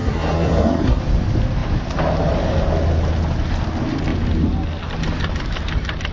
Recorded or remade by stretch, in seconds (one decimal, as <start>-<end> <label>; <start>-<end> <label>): 0.0-1.0 remade; 1.0-6.1 recorded